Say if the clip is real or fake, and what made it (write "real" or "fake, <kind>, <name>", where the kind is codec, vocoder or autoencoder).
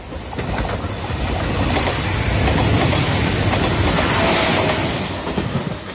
real